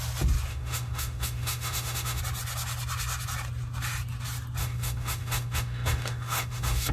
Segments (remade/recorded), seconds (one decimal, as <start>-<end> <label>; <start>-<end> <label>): 0.0-0.5 recorded; 0.5-2.2 remade; 2.2-4.6 recorded; 4.6-6.9 remade